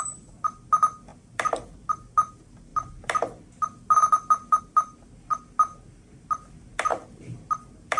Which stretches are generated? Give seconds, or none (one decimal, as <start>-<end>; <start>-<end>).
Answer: none